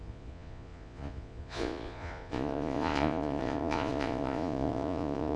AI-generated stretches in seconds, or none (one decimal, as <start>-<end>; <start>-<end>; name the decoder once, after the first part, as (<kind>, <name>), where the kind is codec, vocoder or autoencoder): 0.0-5.4 (vocoder, Vocos)